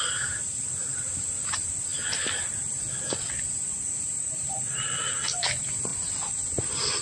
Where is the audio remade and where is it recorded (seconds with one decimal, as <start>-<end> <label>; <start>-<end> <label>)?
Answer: 0.0-7.0 recorded